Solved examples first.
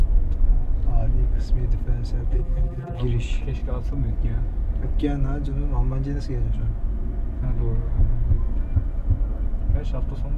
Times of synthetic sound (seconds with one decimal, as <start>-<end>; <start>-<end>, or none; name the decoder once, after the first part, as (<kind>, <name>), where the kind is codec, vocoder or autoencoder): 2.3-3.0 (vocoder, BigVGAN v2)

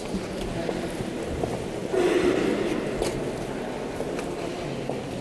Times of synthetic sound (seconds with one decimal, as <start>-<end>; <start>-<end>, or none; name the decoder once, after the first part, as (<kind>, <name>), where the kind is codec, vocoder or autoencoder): none

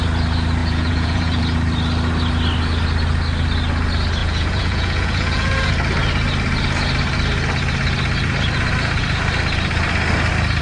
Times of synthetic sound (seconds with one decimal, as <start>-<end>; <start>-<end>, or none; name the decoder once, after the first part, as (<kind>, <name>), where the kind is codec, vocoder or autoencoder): 0.6-1.4 (vocoder, Vocos); 4.2-5.7

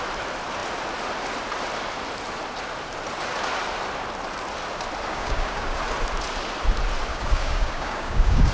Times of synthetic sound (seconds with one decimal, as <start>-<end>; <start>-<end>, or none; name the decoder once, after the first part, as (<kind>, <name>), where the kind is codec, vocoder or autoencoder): 5.1-5.8 (codec, DAC); 7.1-8.5

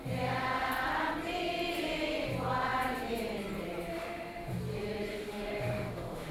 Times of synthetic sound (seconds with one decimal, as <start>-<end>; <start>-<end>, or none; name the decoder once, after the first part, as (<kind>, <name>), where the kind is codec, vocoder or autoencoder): 3.9-4.6 (autoencoder, DAC-VAE); 5.1-6.3